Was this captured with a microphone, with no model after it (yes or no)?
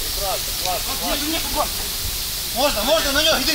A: yes